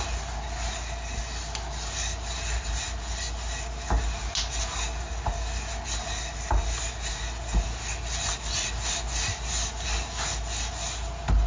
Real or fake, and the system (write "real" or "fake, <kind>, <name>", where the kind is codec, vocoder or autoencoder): real